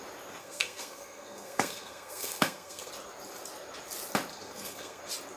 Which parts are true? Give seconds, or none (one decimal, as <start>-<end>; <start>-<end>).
0.0-0.4; 2.9-4.3; 5.0-5.4